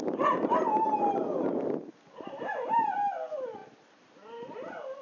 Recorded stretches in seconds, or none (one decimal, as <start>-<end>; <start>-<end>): 0.0-5.0